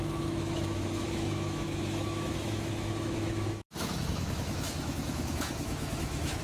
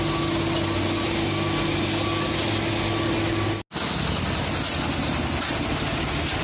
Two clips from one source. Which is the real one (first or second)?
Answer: second